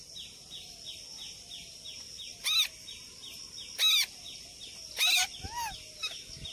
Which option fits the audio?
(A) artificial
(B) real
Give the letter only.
B